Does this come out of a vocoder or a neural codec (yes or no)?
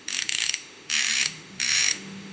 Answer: yes